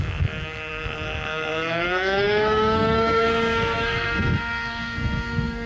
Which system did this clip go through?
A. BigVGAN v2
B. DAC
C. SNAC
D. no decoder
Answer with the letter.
C